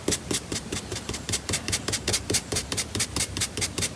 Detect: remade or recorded remade